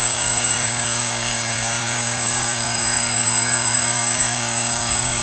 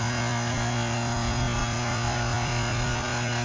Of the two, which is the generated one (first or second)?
first